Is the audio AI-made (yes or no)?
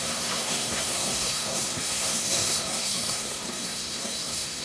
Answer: yes